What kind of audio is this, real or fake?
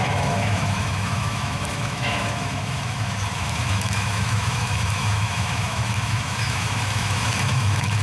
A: fake